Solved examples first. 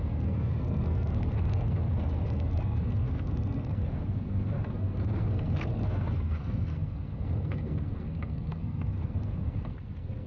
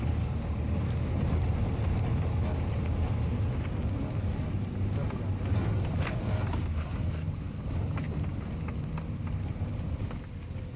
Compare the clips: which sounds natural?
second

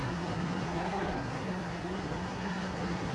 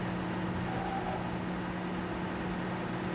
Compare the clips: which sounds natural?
second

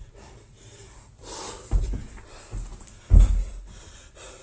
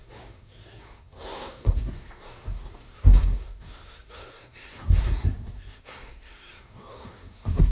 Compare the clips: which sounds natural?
first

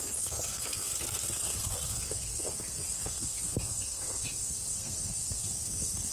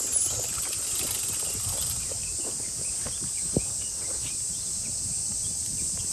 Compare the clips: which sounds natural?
second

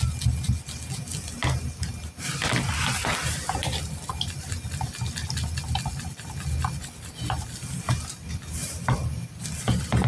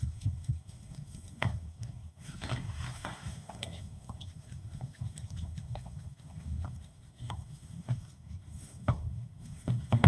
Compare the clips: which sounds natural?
first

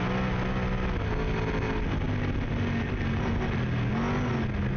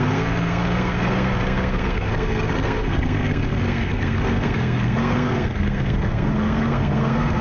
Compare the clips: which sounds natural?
first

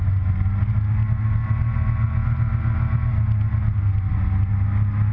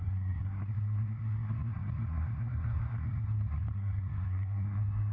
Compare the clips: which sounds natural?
first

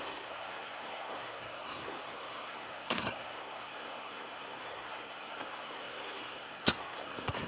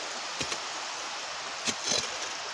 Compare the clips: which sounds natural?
second